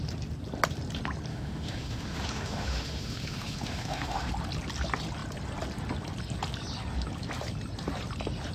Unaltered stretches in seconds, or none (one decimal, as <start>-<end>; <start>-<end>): 0.0-1.3; 4.3-8.5